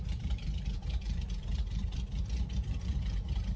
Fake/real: fake